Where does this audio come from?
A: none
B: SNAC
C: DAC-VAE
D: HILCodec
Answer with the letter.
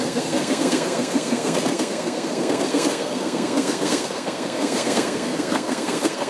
B